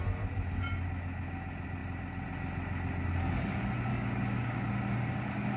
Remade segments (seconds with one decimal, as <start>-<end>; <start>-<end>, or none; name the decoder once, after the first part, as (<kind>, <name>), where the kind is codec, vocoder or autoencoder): 3.9-4.7 (codec, DAC)